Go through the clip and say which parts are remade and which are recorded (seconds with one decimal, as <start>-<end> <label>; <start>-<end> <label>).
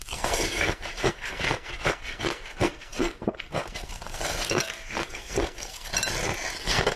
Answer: 0.0-5.9 remade; 5.9-6.6 recorded; 6.6-7.0 remade